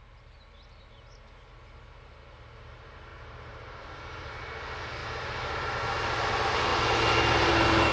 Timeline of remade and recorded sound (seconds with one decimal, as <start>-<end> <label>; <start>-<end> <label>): 0.0-3.1 recorded; 3.1-4.3 remade; 4.3-5.0 recorded; 5.0-5.8 remade; 5.8-7.9 recorded